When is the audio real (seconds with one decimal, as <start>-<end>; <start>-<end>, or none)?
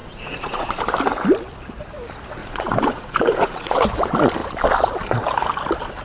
0.8-2.4; 4.0-6.0